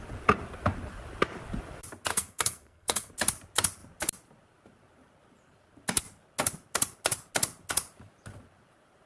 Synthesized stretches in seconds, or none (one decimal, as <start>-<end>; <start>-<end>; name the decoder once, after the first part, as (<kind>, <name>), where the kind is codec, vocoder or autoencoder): 2.1-3.1 (codec, SNAC)